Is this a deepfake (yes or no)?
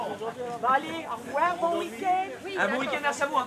no